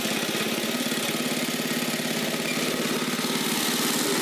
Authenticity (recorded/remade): recorded